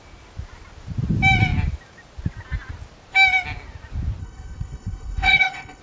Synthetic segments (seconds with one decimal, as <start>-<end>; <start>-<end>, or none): 4.2-5.8